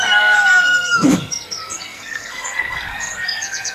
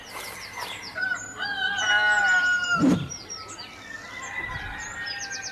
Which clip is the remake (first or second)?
first